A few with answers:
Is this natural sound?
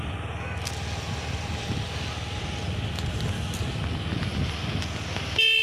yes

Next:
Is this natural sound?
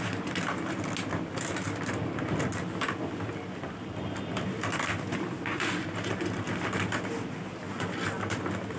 yes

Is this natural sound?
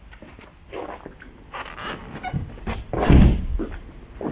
yes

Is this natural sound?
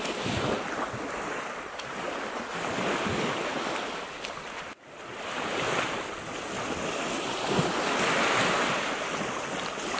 yes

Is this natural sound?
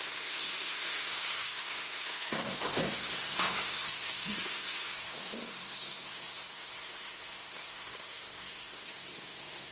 no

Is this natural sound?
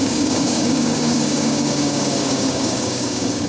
no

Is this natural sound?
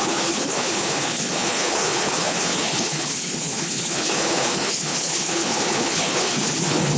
no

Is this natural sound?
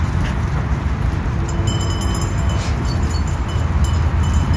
yes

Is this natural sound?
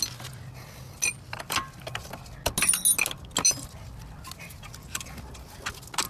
yes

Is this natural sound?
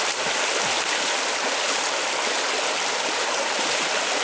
yes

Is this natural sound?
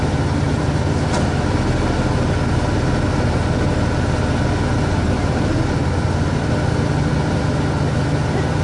yes